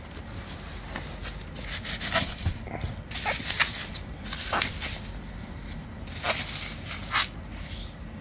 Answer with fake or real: real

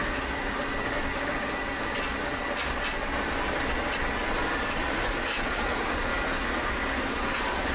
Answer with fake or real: real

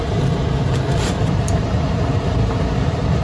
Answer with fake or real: fake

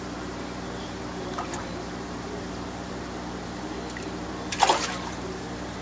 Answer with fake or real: fake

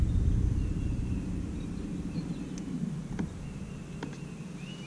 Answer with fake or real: real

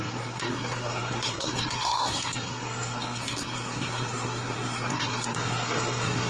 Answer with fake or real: fake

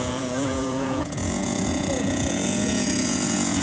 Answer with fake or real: fake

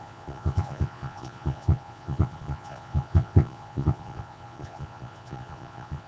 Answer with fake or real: fake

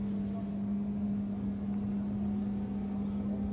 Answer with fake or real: real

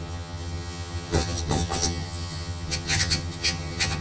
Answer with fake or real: fake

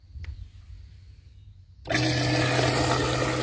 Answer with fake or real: real